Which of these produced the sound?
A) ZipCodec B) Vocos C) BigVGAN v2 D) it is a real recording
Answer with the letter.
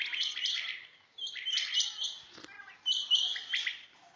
D